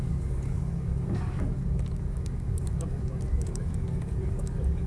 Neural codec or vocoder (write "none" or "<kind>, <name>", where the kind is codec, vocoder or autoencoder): codec, DAC